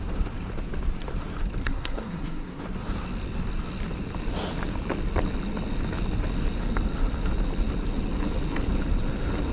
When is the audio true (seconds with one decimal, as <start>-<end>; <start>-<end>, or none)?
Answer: 0.0-1.6; 2.6-9.5